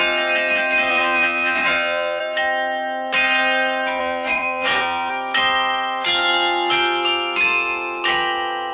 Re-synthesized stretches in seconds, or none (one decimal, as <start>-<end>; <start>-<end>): 0.9-2.2; 4.0-5.1